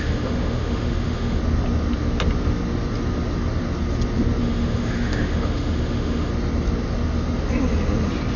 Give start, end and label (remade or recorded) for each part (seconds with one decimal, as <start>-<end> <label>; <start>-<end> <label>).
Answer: 0.0-1.4 remade; 1.4-4.4 recorded; 4.4-6.3 remade; 6.3-8.4 recorded